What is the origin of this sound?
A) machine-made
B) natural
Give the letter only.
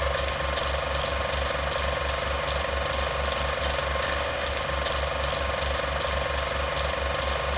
B